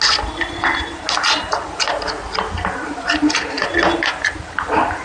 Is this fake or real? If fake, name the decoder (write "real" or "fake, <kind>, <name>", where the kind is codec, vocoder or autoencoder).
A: real